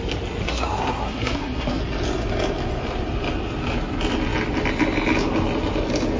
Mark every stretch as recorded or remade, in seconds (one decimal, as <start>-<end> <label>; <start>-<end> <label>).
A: 0.0-0.4 recorded; 0.4-1.8 remade; 1.8-6.2 recorded